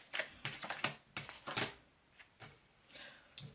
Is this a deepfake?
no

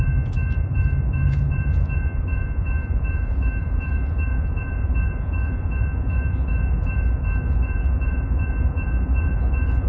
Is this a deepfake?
yes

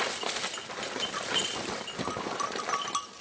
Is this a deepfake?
no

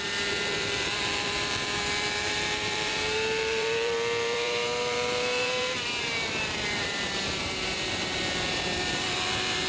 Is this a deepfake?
yes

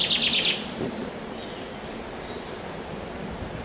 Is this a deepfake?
no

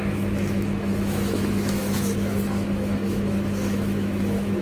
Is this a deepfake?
yes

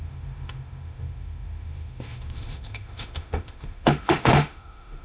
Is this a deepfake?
yes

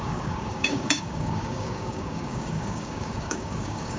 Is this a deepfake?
yes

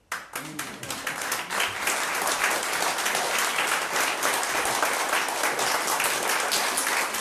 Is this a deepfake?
no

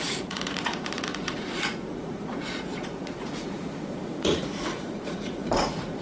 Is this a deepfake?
yes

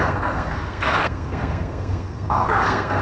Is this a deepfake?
yes